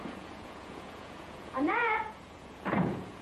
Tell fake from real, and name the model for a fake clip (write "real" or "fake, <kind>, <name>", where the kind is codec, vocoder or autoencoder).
fake, vocoder, Vocos